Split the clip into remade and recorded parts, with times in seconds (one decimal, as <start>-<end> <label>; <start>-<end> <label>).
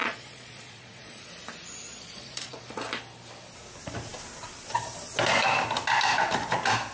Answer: 0.0-1.3 remade; 1.3-1.9 recorded; 1.9-2.8 remade; 2.8-6.9 recorded